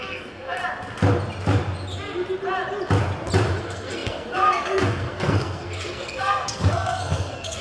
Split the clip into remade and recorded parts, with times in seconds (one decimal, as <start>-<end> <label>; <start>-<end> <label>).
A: 0.0-0.6 remade; 0.6-3.6 recorded; 3.6-7.6 remade

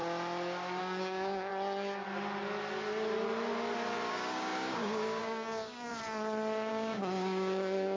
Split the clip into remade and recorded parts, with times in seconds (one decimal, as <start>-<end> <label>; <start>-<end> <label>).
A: 0.0-0.8 recorded; 0.8-1.5 remade; 1.5-4.1 recorded; 4.1-5.9 remade; 5.9-6.7 recorded; 6.7-8.0 remade